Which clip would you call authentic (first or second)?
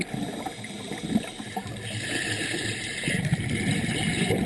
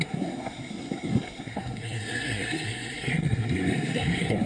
first